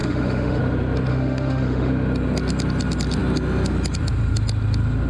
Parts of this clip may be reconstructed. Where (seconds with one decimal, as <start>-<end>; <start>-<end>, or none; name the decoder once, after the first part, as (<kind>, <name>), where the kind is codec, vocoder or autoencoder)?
0.0-0.6 (autoencoder, DAC-VAE); 1.1-1.9